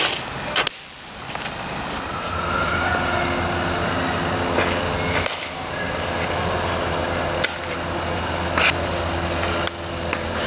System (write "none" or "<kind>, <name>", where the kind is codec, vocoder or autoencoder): none